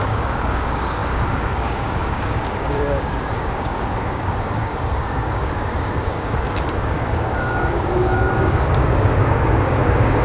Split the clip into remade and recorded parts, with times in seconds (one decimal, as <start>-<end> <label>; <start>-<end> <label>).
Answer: 0.0-10.2 remade